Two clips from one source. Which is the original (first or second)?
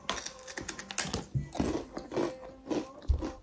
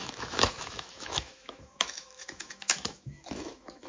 first